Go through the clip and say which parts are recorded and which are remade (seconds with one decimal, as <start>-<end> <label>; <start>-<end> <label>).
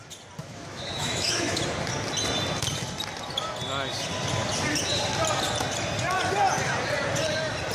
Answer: 0.0-0.4 recorded; 0.4-1.6 remade; 1.6-7.7 recorded